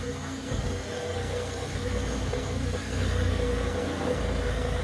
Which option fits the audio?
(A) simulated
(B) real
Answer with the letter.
A